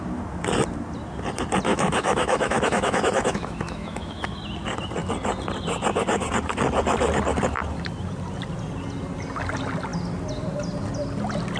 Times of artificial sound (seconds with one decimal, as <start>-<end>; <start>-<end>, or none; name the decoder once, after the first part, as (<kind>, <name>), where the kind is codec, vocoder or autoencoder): 1.7-4.4 (autoencoder, DAC-VAE)